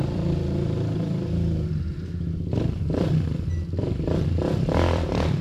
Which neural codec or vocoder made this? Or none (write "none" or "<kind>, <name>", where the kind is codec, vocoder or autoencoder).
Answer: vocoder, BigVGAN v2